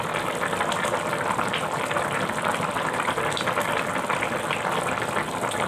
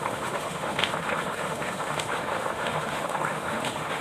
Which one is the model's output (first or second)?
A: second